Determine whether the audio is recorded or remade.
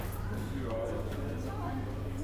recorded